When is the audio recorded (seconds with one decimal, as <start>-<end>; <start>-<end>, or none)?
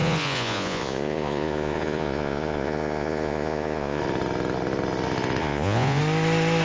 4.0-5.4; 6.0-6.6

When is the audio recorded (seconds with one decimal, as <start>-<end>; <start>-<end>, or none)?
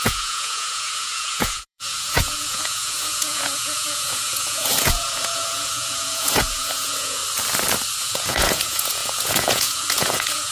7.2-8.0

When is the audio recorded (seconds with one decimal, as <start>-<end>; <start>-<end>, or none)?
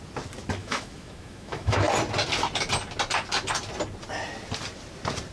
0.0-0.6; 1.9-5.3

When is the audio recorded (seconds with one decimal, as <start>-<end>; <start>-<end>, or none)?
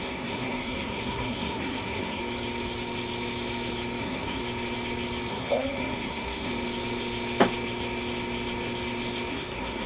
2.2-4.0; 4.4-5.3; 6.5-9.3